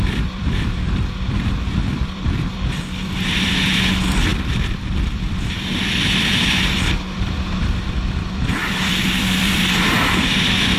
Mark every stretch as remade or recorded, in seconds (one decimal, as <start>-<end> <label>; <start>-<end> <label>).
0.0-10.8 remade